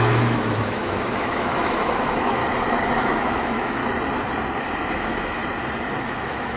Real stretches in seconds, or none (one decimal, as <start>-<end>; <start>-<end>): 2.4-3.0; 3.8-4.9; 5.4-6.0